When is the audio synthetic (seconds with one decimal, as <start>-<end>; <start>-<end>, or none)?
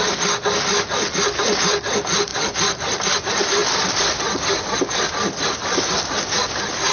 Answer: none